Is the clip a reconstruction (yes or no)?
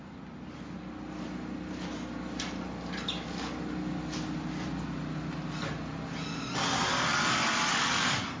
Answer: no